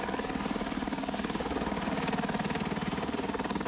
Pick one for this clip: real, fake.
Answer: real